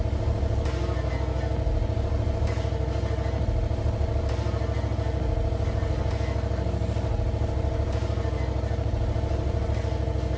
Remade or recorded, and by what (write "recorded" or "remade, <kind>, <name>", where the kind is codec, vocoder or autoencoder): recorded